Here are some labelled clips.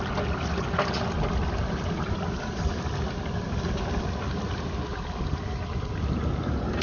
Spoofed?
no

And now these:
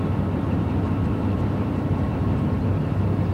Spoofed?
yes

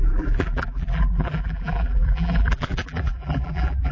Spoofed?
yes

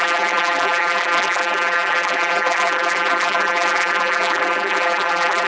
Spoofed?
yes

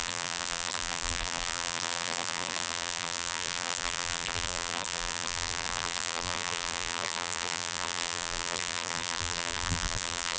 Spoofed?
yes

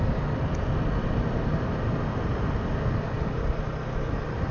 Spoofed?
no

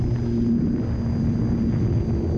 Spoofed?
no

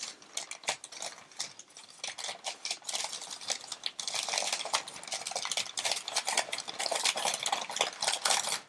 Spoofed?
no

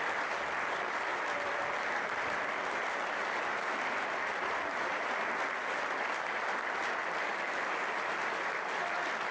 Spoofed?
yes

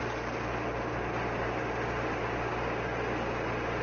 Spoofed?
no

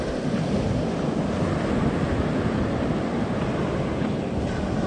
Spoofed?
no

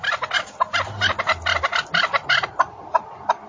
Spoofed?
yes